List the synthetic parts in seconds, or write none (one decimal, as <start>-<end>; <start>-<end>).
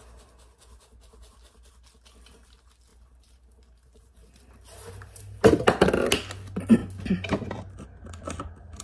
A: 2.9-5.6